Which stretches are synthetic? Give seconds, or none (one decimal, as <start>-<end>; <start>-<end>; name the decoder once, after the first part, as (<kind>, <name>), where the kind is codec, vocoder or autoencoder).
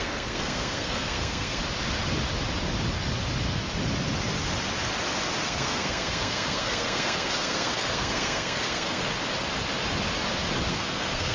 0.0-1.6 (codec, SNAC); 5.4-9.0; 10.7-11.3